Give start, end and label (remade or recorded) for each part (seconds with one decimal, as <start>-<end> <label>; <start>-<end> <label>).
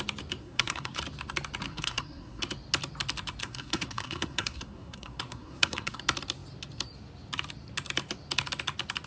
0.0-0.4 recorded; 0.4-1.0 remade; 1.0-1.7 recorded; 1.7-2.4 remade; 2.4-3.4 recorded; 3.4-6.0 remade; 6.0-9.1 recorded